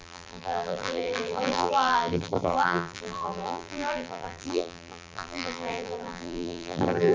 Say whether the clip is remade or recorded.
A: remade